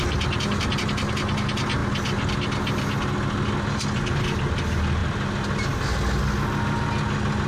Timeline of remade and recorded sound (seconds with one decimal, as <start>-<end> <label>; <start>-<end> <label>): 0.0-7.5 recorded